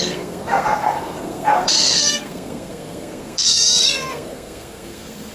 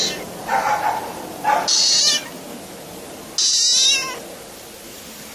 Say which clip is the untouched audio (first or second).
second